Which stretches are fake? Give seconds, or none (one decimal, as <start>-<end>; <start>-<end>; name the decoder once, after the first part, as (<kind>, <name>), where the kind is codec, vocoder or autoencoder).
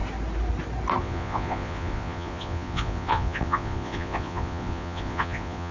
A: 1.0-5.7 (vocoder, Vocos)